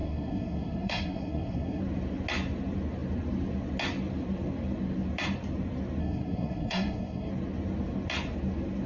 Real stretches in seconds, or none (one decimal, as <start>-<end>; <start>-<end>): 1.8-6.0; 7.3-8.9